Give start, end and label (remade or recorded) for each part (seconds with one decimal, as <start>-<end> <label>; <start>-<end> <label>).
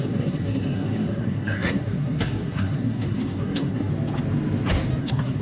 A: 0.0-3.9 remade; 3.9-5.0 recorded; 5.0-5.4 remade